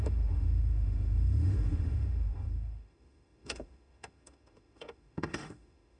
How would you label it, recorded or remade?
remade